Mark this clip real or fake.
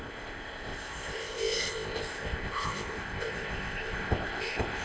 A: fake